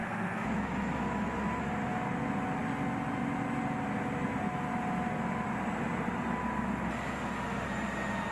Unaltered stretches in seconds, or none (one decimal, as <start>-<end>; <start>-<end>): 1.7-8.3